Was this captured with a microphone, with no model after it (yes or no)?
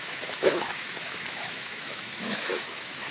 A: no